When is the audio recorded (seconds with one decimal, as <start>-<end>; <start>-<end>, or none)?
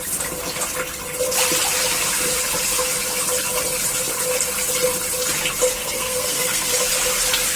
0.0-5.8; 6.7-7.6